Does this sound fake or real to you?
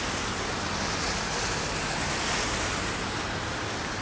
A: real